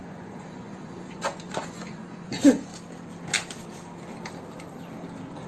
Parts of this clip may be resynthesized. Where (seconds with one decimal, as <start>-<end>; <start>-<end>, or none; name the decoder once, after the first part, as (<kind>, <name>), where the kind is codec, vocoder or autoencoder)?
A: 0.0-2.7 (vocoder, Vocos)